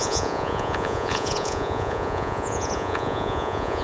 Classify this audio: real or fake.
fake